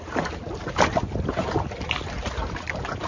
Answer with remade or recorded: recorded